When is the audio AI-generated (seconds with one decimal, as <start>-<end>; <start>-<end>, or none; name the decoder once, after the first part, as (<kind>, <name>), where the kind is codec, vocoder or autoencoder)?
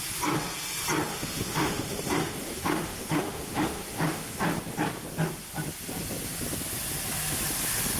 1.1-4.4 (autoencoder, DAC-VAE)